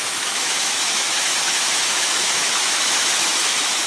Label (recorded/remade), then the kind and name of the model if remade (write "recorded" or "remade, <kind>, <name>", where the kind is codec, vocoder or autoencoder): remade, autoencoder, DAC-VAE